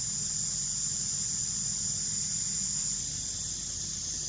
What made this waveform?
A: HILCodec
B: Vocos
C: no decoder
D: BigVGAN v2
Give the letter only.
C